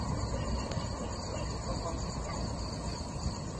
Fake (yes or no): no